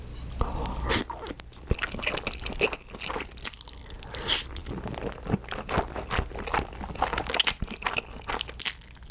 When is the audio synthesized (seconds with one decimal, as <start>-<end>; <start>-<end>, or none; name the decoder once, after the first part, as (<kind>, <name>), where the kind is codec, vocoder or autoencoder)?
none